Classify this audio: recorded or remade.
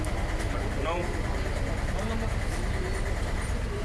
recorded